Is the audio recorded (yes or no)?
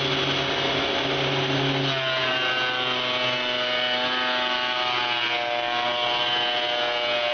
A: yes